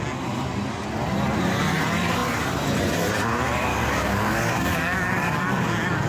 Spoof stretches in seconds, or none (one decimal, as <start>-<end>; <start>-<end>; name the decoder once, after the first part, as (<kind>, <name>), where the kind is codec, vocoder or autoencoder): 3.7-6.1 (codec, DAC)

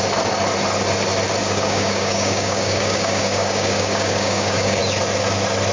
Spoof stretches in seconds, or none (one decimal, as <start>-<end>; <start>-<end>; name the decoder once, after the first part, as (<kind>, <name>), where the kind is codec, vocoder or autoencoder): 1.4-4.8 (codec, DAC)

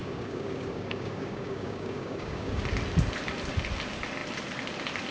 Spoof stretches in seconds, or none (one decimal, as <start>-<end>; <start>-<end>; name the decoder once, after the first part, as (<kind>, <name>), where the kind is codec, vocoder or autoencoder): 0.0-2.6 (codec, DAC)

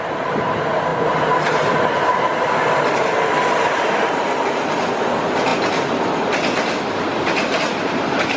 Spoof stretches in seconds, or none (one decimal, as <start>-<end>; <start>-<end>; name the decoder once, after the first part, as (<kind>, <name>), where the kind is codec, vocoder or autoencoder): none

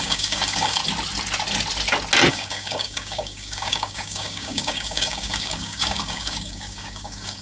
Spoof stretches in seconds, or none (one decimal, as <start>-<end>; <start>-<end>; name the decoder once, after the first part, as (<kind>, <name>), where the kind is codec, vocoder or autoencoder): 0.0-0.8 (codec, DAC); 2.3-7.4

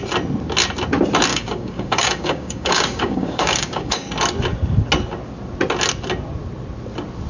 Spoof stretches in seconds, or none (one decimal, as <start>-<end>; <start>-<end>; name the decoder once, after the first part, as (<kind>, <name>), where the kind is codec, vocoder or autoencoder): 1.3-4.1 (codec, DAC)

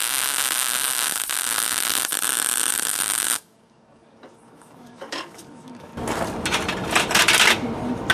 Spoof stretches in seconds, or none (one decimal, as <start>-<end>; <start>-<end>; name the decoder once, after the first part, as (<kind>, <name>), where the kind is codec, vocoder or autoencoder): 0.0-2.1 (codec, DAC); 2.7-5.9